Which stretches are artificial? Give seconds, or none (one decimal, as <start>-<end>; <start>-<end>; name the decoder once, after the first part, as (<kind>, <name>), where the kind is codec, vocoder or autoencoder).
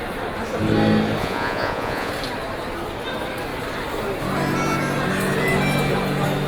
1.2-2.1 (vocoder, Vocos)